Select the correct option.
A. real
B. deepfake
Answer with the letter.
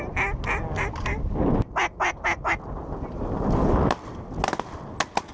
A